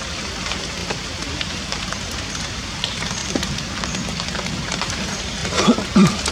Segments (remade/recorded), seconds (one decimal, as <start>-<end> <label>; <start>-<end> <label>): 0.0-3.2 remade; 3.2-4.7 recorded; 4.7-6.3 remade